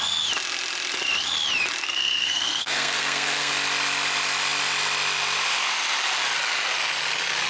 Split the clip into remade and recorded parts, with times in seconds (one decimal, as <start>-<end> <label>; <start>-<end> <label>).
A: 0.0-1.8 recorded; 1.8-3.5 remade; 3.5-7.5 recorded